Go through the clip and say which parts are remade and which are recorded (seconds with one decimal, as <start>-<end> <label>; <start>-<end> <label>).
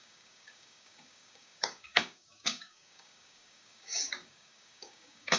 0.0-5.4 remade